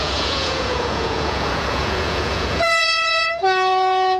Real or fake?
fake